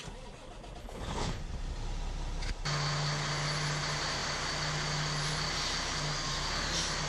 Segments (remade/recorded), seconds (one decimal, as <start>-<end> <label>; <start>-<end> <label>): 0.0-0.8 recorded; 0.8-1.4 remade; 1.4-7.1 recorded